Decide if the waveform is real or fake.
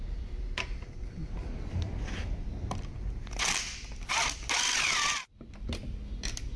real